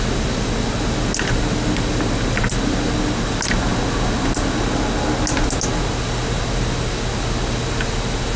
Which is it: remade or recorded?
recorded